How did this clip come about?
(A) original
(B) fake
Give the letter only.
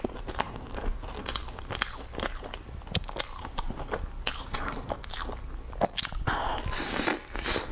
A